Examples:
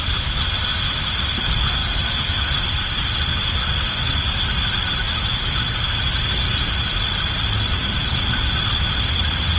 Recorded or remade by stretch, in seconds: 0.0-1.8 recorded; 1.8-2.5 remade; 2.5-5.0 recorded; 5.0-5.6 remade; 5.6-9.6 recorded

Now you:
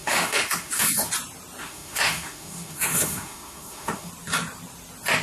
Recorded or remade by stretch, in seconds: 0.0-1.1 remade; 1.1-1.6 recorded; 1.6-4.1 remade; 4.1-5.2 recorded

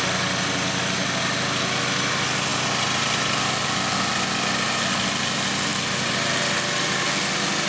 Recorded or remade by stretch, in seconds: 0.0-7.7 recorded

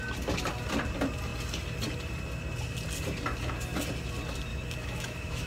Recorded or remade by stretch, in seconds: 0.0-4.5 recorded; 4.5-5.5 remade

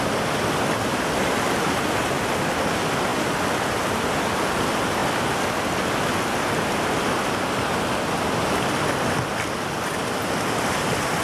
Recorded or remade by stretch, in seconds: 0.0-11.2 recorded

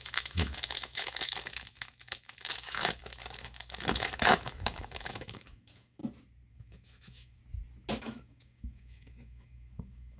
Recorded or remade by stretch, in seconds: 0.0-6.0 remade; 6.0-6.5 recorded; 6.5-7.4 remade; 7.4-8.0 recorded; 8.0-10.2 remade

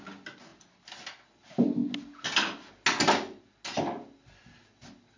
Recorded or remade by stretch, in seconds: 0.0-5.2 recorded